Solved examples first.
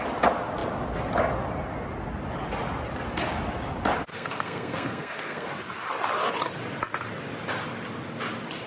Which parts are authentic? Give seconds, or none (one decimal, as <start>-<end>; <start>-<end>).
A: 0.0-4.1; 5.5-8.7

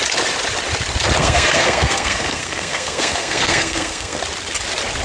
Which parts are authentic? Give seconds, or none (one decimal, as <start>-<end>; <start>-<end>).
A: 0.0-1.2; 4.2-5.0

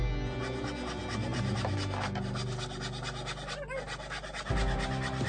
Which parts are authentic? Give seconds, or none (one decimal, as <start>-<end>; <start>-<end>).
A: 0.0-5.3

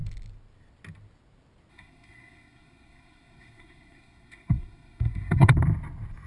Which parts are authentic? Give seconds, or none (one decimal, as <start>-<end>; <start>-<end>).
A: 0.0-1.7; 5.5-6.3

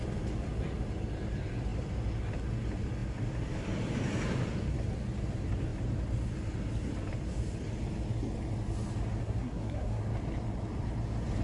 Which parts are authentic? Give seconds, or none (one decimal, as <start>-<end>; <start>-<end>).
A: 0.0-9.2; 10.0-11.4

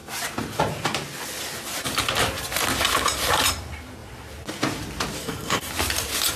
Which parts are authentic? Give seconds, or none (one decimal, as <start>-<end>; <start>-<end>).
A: 0.0-5.2; 5.7-6.4

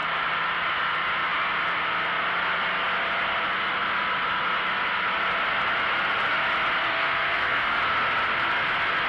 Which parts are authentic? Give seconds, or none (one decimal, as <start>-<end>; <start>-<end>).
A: 0.0-6.9; 7.8-9.1

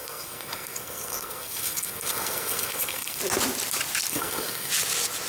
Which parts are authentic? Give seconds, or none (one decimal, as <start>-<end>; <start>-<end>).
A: 3.2-4.1; 4.7-5.3